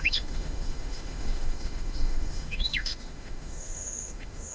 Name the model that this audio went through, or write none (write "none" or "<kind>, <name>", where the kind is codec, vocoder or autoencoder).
autoencoder, DAC-VAE